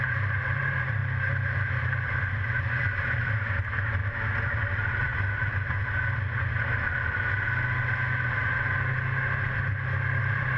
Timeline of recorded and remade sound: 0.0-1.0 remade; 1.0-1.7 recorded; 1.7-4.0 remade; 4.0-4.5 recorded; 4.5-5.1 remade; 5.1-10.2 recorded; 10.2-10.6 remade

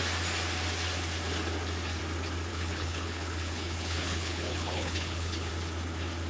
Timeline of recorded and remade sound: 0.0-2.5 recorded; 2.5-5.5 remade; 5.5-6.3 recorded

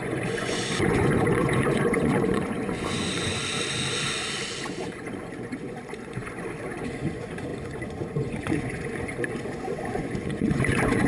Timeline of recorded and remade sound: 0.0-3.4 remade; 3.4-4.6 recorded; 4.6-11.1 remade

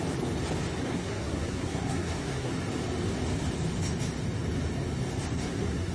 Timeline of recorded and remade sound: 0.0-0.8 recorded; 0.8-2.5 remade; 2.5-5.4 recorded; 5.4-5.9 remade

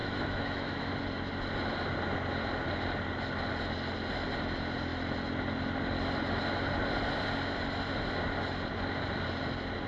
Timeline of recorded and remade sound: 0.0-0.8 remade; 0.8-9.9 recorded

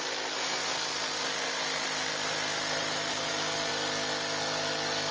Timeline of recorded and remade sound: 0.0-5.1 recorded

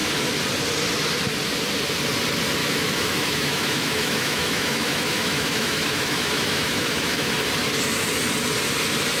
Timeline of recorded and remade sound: 0.0-2.6 recorded; 2.6-7.3 remade; 7.3-9.2 recorded

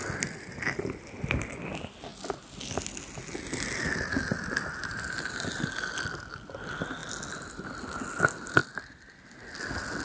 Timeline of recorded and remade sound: 0.0-10.0 recorded